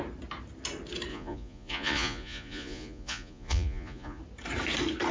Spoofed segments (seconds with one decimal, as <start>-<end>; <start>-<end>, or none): 1.1-4.2